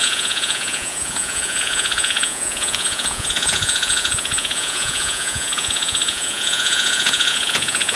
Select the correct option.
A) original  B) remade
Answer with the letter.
B